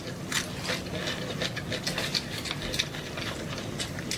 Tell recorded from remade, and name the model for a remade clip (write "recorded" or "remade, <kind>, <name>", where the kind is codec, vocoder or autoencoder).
recorded